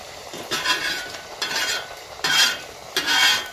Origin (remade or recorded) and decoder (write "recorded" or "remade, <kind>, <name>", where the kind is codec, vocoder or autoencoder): remade, vocoder, BigVGAN v2